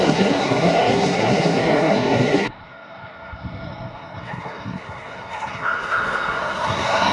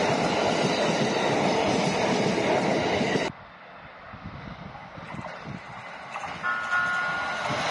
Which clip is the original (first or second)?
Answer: second